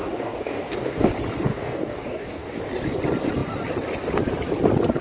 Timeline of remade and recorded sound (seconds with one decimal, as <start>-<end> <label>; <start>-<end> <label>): 0.0-1.1 remade; 1.1-1.5 recorded; 1.5-2.6 remade; 2.6-5.0 recorded